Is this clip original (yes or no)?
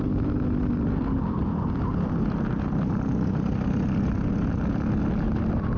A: yes